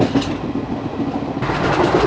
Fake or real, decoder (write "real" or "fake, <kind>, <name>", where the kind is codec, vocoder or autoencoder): real